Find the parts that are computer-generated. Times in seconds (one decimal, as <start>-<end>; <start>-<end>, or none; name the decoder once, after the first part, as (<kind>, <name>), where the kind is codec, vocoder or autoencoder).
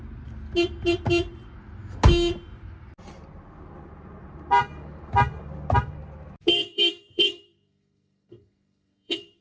6.5-9.4 (codec, SNAC)